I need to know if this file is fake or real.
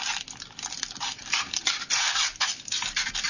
real